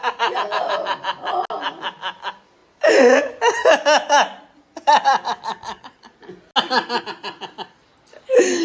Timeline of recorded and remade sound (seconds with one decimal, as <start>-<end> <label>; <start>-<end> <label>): 0.0-8.6 recorded